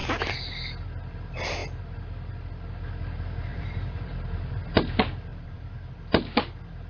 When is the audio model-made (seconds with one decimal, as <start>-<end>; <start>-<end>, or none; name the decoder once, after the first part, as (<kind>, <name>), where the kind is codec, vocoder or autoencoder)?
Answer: 3.5-4.6 (vocoder, BigVGAN v2); 5.3-5.9